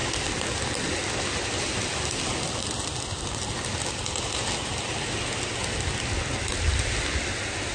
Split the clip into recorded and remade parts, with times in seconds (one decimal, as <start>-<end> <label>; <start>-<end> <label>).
0.0-7.7 recorded